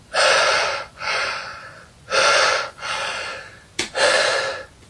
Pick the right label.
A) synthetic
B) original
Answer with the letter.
A